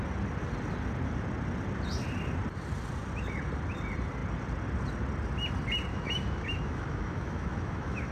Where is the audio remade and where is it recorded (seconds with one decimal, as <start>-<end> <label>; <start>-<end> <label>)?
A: 0.0-5.9 recorded; 5.9-8.1 remade